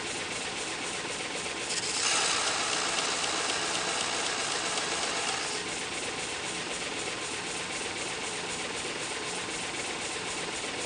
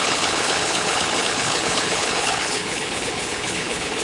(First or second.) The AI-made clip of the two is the second